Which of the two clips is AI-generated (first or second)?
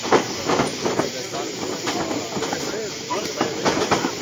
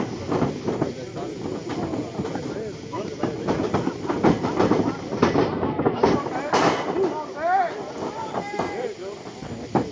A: second